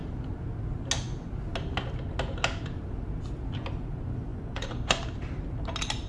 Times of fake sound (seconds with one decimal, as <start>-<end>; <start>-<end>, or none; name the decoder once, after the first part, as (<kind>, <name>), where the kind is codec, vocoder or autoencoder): 4.3-5.0 (vocoder, Vocos)